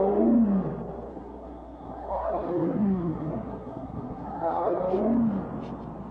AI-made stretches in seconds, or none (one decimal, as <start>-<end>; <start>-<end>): 1.1-4.8